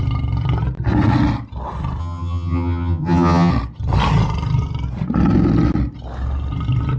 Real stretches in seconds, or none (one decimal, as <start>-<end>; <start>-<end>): 0.0-2.0; 3.5-7.0